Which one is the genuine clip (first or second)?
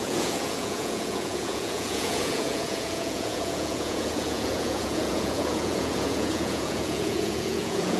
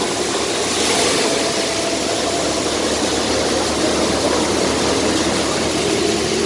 second